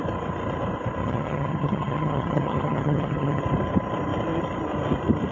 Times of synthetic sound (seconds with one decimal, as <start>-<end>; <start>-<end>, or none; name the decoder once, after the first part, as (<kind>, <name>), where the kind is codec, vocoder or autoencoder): 1.0-3.4 (vocoder, HiFi-GAN)